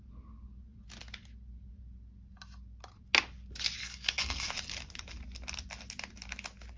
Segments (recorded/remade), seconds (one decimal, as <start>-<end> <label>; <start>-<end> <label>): 0.0-3.8 recorded; 3.8-4.5 remade; 4.5-6.8 recorded